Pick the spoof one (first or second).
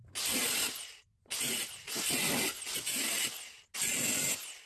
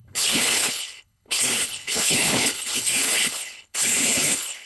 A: second